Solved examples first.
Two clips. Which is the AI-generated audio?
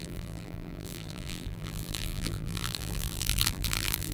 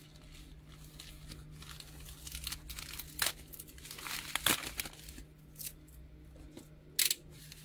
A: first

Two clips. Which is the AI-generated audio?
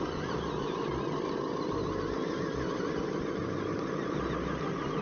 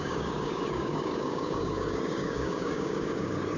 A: second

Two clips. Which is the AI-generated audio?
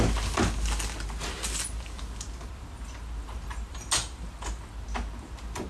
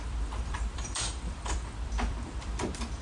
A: second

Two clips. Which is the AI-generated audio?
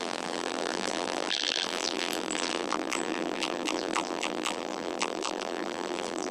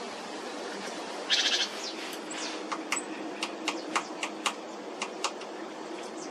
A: first